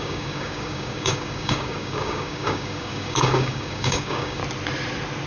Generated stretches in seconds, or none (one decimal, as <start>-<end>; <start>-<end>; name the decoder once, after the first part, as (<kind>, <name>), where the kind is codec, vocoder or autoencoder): 0.0-4.4 (codec, DAC)